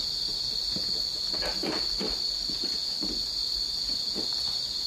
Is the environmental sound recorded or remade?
recorded